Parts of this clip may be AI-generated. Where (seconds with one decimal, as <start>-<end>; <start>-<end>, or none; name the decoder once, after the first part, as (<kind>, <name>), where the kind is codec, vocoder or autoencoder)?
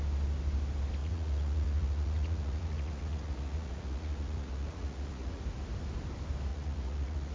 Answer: 1.0-5.4 (vocoder, Vocos); 6.5-7.3